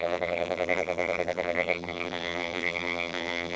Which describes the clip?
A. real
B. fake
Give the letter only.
B